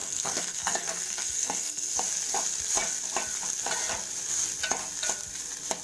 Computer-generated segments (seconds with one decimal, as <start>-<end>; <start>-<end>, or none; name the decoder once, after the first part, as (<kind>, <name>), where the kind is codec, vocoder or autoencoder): 0.0-2.0 (codec, SNAC)